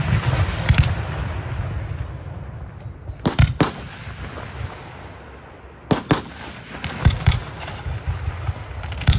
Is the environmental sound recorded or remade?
recorded